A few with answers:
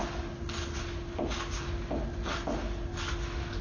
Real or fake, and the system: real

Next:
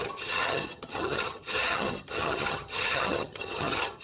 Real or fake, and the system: fake, vocoder, HiFi-GAN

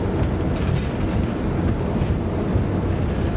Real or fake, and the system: real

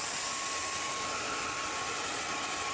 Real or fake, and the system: real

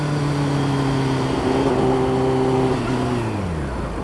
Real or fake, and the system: real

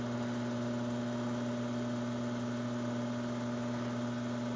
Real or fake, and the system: real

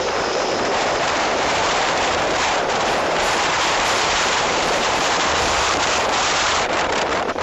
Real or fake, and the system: fake, vocoder, BigVGAN v2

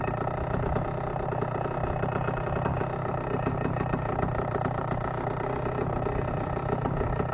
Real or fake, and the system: real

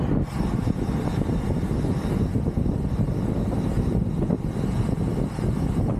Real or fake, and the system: real